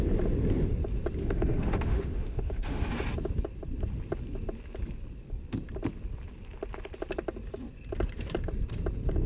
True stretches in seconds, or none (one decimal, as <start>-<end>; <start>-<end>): 0.0-1.2; 2.9-9.3

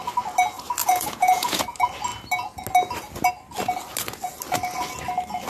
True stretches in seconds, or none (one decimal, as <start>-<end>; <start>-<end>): 0.0-0.8; 1.6-5.5

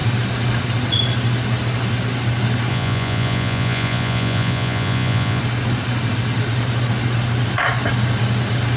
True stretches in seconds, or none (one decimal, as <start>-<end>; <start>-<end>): 0.0-2.7; 5.4-8.8

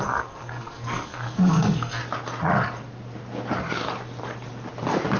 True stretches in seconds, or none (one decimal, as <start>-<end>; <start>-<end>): 2.0-5.2

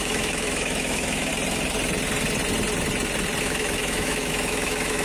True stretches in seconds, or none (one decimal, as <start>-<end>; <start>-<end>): 1.3-3.4

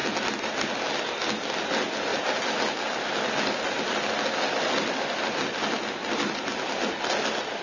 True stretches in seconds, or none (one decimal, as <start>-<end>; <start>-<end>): 0.0-7.6

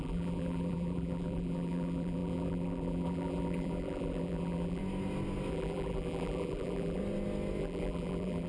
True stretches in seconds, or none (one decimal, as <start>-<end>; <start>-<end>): 4.8-5.5; 7.0-7.6